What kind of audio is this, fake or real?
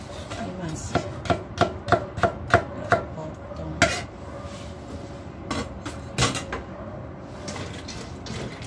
real